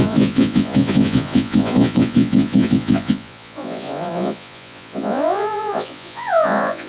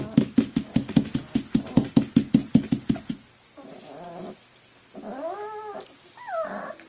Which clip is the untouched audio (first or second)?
second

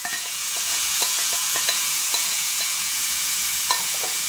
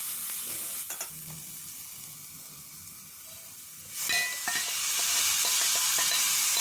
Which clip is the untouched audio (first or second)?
second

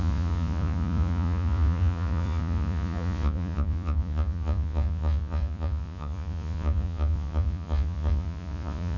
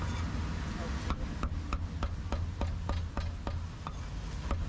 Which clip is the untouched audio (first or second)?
second